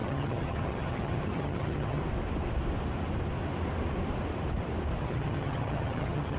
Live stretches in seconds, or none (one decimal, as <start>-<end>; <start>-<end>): 2.0-5.0